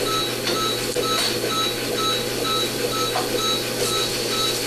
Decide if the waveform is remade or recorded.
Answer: recorded